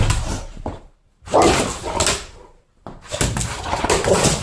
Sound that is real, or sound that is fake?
real